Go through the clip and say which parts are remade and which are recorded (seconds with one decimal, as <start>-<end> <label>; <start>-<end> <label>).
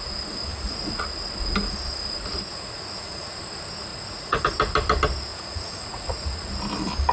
0.0-0.5 recorded; 0.5-1.0 remade; 1.0-2.5 recorded; 2.5-3.4 remade; 3.4-3.9 recorded; 3.9-4.4 remade; 4.4-5.3 recorded; 5.3-6.5 remade; 6.5-7.1 recorded